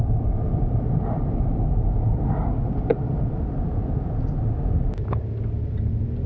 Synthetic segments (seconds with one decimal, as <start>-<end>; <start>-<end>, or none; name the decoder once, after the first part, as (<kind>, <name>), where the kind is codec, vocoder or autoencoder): 0.0-0.9 (vocoder, BigVGAN v2); 2.9-3.7